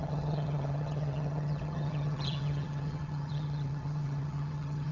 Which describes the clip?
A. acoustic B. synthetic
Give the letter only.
B